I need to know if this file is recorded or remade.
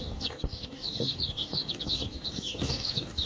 remade